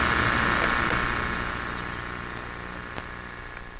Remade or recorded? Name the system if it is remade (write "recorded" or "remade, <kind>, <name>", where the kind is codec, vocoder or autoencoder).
recorded